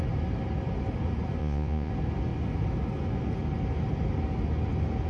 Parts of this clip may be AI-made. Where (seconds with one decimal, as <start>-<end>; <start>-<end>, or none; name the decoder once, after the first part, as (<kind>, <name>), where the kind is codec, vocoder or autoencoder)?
1.4-1.9 (vocoder, Vocos)